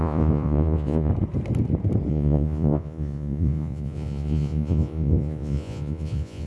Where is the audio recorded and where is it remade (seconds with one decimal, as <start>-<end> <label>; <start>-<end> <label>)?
0.0-1.1 remade; 1.1-2.1 recorded; 2.1-6.5 remade